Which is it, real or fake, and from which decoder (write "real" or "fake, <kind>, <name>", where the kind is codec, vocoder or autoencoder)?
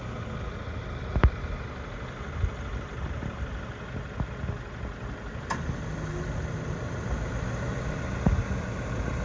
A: real